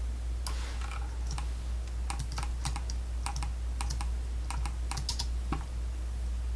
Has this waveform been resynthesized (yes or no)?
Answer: no